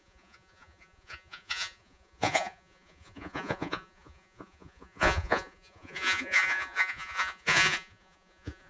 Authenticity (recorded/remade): remade